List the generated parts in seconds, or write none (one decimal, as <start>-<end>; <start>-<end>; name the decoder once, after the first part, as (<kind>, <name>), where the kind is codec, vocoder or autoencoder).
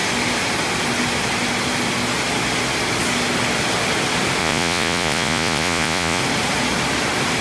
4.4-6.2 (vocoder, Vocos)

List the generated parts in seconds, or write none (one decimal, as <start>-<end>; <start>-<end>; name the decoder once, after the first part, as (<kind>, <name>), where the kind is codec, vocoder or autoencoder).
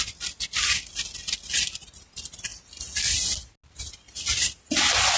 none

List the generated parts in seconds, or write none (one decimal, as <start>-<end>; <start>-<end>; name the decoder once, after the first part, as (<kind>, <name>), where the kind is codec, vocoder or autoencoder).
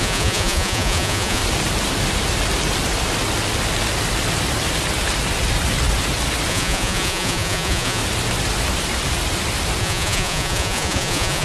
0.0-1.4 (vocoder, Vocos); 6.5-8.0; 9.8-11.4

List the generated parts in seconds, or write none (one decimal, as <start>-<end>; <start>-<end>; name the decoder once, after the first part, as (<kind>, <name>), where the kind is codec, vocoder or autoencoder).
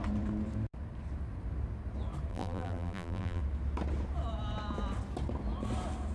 2.3-3.4 (vocoder, BigVGAN v2)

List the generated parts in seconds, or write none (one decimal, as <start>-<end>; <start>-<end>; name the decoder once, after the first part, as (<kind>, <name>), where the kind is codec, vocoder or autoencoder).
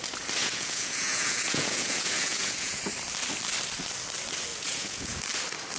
0.4-2.8 (vocoder, Vocos); 4.5-5.2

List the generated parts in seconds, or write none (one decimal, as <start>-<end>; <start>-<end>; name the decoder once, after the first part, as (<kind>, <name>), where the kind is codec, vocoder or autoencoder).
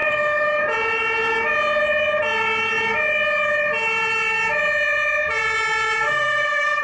0.0-0.6 (codec, DAC); 6.0-6.8